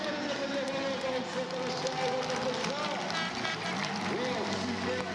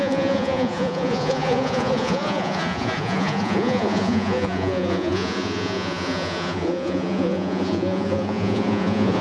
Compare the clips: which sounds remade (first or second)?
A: second